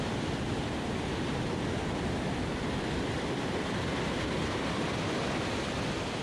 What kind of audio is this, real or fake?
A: fake